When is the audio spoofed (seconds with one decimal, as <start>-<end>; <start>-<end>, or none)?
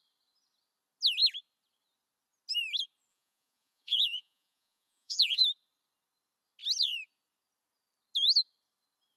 3.1-5.4